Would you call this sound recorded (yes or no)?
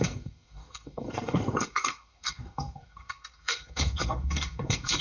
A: no